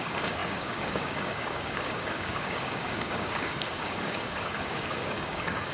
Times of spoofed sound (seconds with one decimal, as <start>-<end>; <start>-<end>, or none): 0.0-5.7